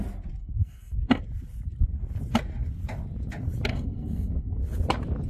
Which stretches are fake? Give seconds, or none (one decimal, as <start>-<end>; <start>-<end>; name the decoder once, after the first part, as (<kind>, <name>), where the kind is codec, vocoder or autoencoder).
0.4-1.2 (codec, SNAC); 3.7-4.6